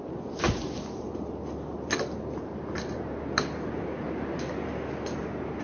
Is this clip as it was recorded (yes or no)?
yes